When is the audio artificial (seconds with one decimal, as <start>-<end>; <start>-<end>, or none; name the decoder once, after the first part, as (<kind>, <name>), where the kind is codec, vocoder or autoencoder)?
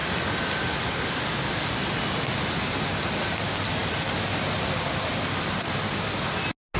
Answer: none